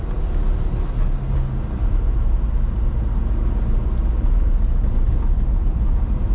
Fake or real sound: real